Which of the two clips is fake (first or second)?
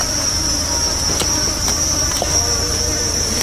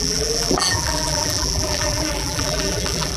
second